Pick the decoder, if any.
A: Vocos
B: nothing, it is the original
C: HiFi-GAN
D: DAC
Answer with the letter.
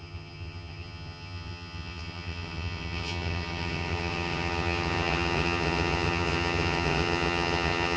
C